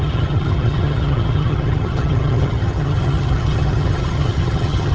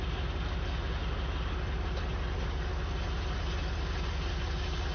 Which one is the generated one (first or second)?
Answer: first